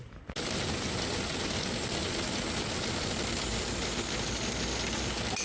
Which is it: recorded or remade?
recorded